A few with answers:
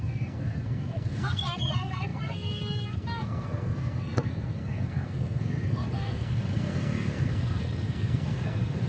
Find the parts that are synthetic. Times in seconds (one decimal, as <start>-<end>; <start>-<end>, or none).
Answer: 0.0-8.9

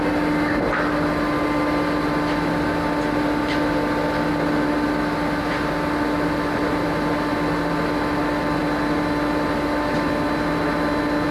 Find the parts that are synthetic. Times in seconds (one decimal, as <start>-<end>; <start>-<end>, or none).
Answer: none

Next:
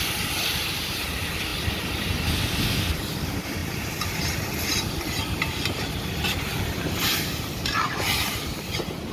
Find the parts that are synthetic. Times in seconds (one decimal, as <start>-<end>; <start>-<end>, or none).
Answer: 0.0-1.5; 3.2-3.6; 7.4-9.1

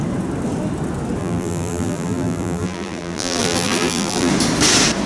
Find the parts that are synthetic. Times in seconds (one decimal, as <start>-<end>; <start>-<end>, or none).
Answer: 1.2-4.3

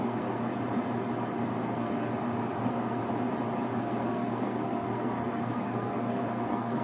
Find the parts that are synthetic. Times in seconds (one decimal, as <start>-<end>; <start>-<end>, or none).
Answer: 0.0-0.5; 1.6-2.1; 2.6-3.0; 3.8-6.8

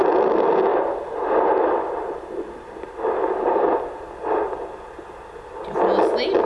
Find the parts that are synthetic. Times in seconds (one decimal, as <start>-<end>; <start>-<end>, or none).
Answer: 0.7-2.9

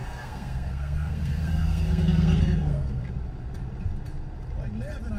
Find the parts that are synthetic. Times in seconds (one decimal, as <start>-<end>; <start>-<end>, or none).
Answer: 0.0-3.1